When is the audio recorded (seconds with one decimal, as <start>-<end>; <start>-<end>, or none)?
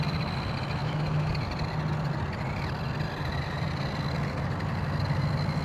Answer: 0.0-0.8; 1.3-5.6